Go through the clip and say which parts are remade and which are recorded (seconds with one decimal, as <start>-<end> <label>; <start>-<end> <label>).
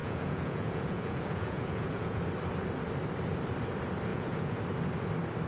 0.0-2.2 remade; 2.2-4.1 recorded; 4.1-4.6 remade; 4.6-5.5 recorded